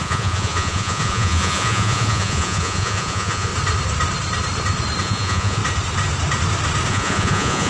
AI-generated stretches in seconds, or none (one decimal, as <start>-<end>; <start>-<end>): 0.0-3.5; 5.0-5.6; 6.9-7.7